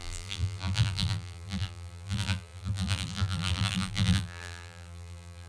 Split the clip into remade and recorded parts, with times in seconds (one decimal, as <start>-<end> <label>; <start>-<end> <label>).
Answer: 0.0-5.5 remade